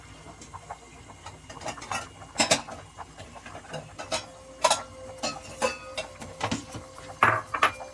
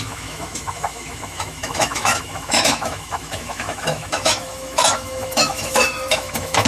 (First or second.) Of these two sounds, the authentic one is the first